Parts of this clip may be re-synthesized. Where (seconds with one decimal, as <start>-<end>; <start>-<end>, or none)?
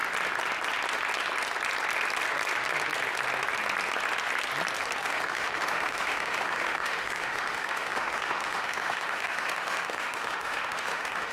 5.0-11.3